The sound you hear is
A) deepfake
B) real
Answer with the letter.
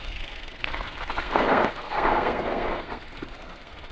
A